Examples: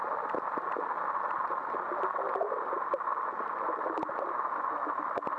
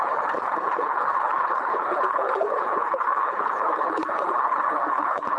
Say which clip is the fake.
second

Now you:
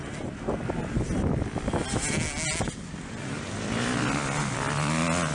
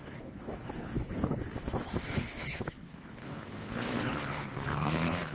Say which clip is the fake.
second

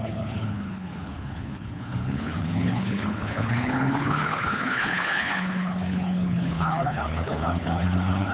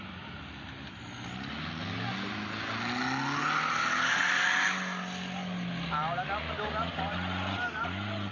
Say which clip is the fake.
first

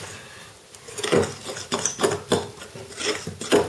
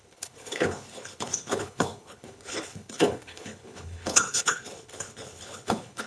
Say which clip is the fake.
second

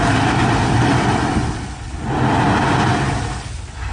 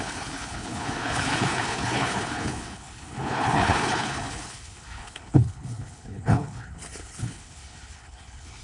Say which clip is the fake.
second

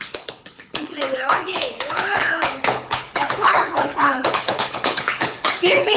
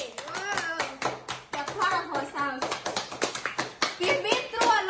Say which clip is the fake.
first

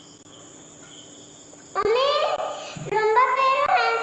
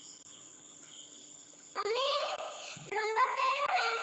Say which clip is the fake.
second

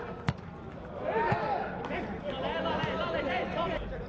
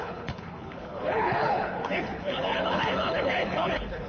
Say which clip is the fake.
second